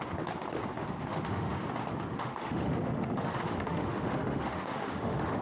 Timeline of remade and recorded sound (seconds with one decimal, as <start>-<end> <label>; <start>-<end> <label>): 0.0-1.1 recorded; 1.1-1.6 remade; 1.6-2.1 recorded; 2.1-5.4 remade